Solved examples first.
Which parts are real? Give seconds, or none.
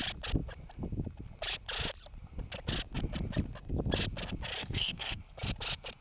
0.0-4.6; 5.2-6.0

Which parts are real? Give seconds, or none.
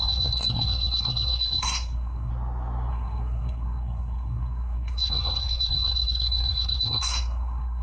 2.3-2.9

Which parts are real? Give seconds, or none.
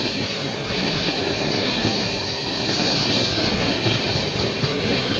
4.0-4.6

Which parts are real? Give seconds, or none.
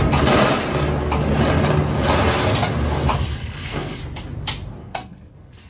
0.0-3.4; 4.0-4.8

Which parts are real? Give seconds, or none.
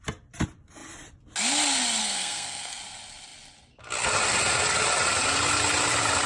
0.0-2.0; 2.8-6.3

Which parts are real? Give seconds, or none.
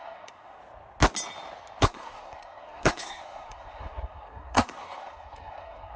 0.6-1.8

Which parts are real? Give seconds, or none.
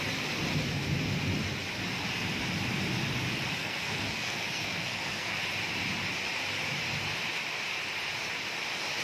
0.0-3.6; 5.4-9.0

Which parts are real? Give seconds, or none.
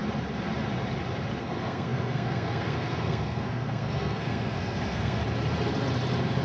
0.0-1.4; 5.2-6.4